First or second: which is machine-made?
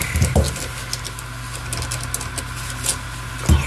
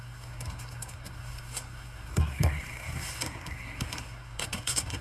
second